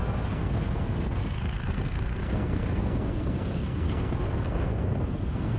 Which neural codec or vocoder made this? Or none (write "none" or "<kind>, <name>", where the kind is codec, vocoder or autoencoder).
codec, SNAC